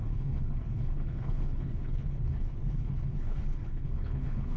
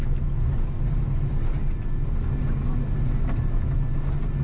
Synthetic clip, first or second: first